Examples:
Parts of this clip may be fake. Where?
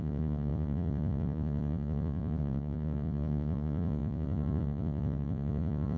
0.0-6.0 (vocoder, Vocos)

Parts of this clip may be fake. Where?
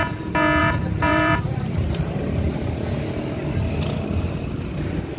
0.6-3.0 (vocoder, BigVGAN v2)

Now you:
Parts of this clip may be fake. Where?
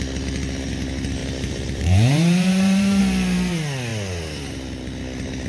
1.2-3.0 (vocoder, BigVGAN v2)